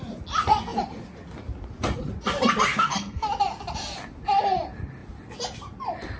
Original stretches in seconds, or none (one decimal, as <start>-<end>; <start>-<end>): 0.0-2.7; 3.3-6.2